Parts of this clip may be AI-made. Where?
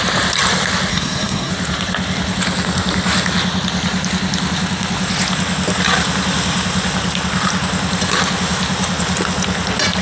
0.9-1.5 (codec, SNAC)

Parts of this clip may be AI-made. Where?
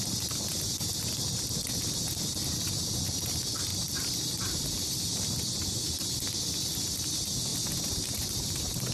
3.7-4.8 (vocoder, BigVGAN v2); 7.5-8.9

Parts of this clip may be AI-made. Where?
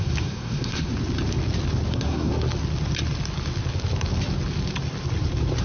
0.0-0.9 (codec, SNAC); 1.9-2.3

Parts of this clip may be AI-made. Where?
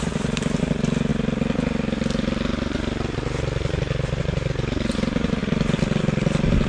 none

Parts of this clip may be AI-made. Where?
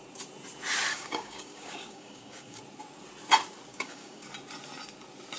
0.9-2.6 (codec, DAC); 3.7-4.3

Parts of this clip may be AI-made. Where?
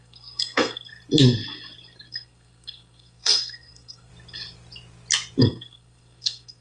0.0-0.9 (codec, SNAC); 2.1-4.1; 5.4-6.6